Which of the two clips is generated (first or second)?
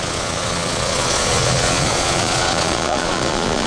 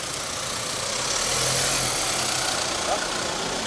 first